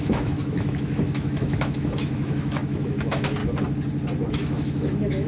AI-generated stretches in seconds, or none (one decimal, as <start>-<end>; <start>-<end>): 0.0-3.4; 4.3-5.3